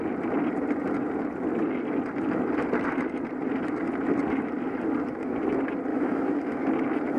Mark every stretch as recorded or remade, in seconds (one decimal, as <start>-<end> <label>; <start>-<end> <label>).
0.0-5.9 recorded; 5.9-6.6 remade; 6.6-7.2 recorded